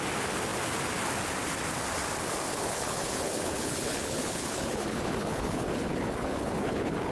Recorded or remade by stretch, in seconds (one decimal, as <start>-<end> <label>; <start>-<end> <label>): 0.0-2.5 recorded; 2.5-7.1 remade